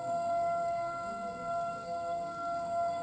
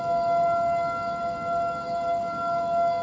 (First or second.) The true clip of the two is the second